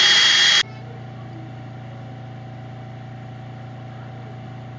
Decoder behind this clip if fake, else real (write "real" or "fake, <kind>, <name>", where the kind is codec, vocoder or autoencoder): real